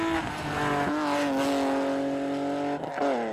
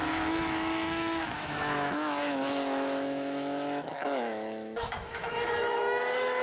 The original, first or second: first